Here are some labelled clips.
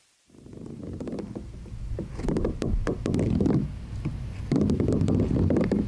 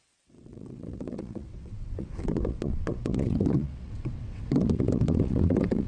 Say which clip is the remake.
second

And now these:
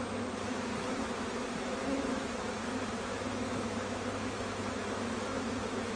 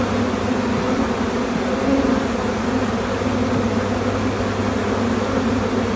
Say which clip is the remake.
first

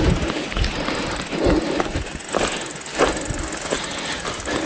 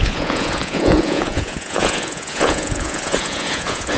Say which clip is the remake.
second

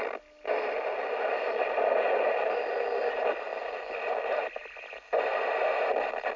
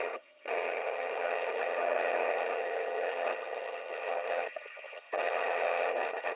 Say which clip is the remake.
second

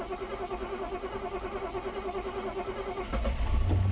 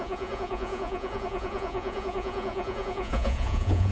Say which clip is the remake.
second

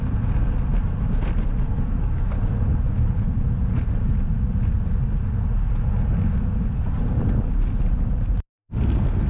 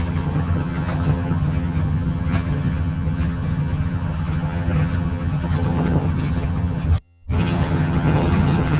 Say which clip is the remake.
second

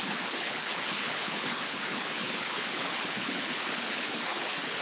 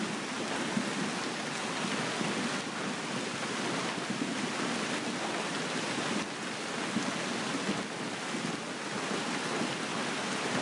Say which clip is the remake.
first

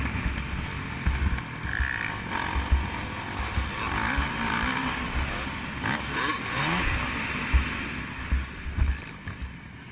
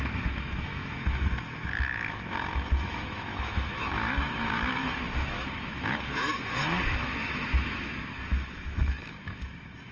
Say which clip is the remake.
second